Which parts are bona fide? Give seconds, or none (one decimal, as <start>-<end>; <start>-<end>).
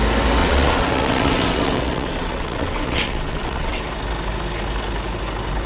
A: 0.0-0.4; 3.8-5.7